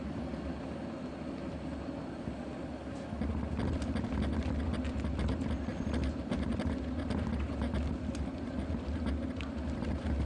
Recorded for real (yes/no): yes